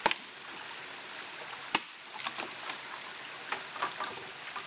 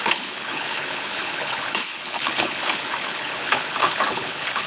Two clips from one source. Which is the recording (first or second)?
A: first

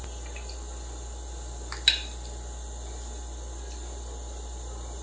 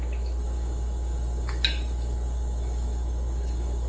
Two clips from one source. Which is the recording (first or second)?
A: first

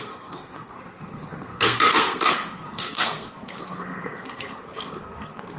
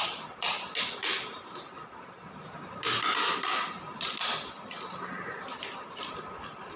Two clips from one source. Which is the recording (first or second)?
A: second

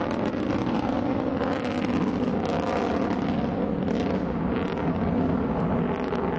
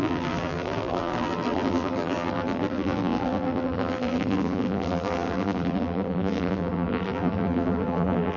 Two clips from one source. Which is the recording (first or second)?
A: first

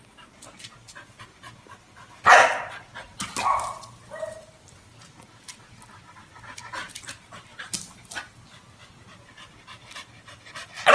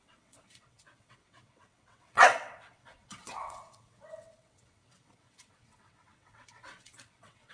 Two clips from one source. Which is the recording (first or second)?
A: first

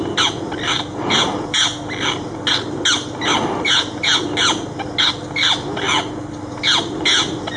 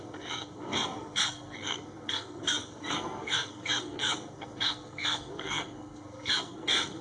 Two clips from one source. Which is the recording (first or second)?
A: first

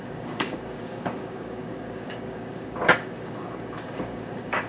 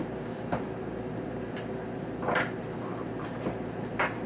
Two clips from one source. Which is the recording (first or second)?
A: second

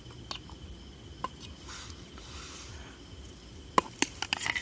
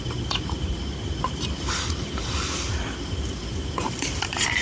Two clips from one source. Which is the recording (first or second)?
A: first